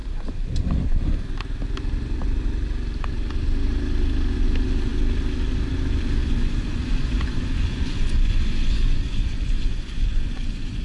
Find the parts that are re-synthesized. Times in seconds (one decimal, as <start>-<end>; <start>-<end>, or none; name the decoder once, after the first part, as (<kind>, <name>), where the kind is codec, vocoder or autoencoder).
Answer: 6.2-10.8 (vocoder, Vocos)